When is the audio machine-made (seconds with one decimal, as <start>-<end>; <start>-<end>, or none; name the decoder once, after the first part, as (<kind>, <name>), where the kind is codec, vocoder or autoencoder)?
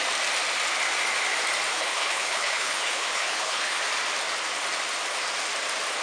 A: 1.7-3.8 (codec, HILCodec)